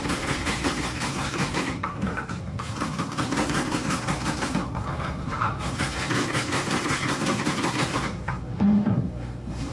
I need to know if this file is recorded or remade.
remade